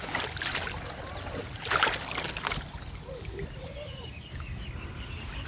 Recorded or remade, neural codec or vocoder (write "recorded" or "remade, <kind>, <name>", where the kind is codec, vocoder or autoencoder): recorded